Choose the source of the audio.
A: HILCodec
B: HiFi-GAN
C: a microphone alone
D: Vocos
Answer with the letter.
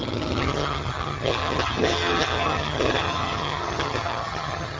B